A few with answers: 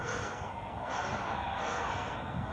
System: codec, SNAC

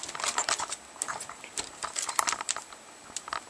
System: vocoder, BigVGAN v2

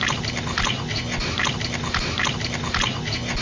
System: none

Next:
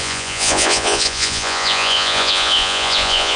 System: vocoder, Vocos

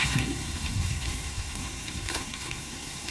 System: codec, SNAC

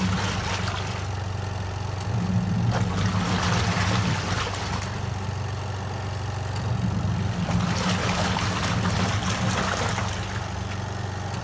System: none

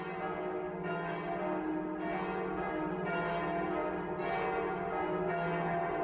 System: none